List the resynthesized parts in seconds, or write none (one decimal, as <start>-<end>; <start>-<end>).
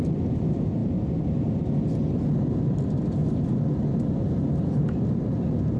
3.2-3.7